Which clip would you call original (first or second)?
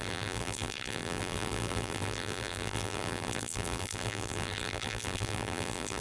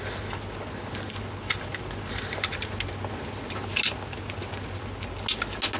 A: second